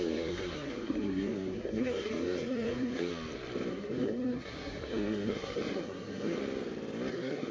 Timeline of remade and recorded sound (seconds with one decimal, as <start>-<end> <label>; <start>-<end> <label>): 0.0-3.1 remade; 3.1-3.7 recorded; 3.7-6.4 remade; 6.4-7.1 recorded; 7.1-7.5 remade